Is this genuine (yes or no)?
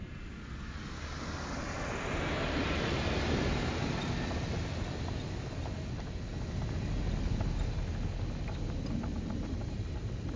yes